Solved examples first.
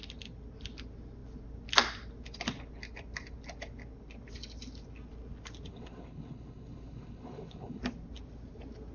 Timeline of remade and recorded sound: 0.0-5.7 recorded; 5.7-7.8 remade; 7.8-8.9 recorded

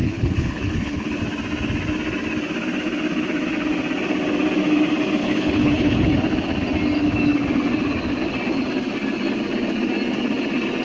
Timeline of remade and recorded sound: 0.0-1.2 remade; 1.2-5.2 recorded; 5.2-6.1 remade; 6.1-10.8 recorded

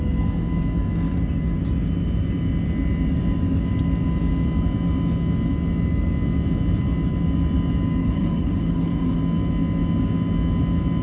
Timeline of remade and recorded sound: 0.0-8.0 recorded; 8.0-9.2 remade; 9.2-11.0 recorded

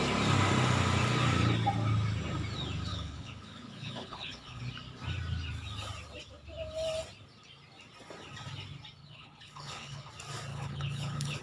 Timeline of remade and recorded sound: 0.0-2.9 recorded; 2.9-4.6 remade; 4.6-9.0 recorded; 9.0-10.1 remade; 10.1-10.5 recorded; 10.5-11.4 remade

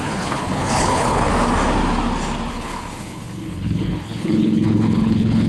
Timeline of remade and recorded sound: 0.0-1.3 remade; 1.3-2.5 recorded; 2.5-5.5 remade

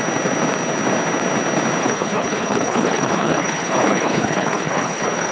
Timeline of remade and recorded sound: 0.0-1.8 recorded; 1.8-5.3 remade

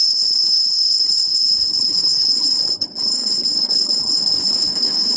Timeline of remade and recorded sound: 0.0-5.2 remade